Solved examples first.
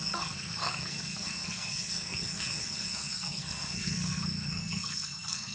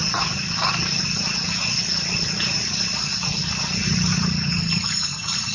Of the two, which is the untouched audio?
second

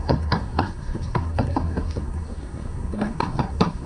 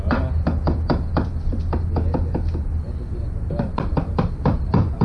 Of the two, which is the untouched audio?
second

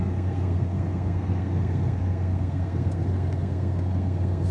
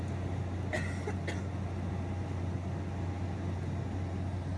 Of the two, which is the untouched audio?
second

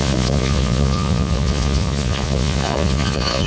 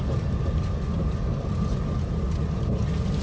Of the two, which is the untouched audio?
second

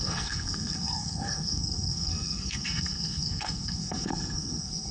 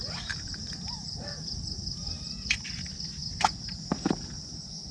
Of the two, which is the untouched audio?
second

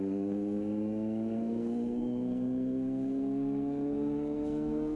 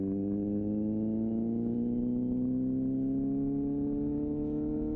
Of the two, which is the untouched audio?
second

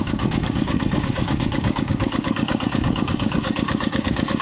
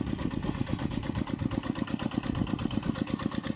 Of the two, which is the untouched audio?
second